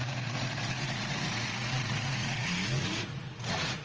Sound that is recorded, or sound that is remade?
remade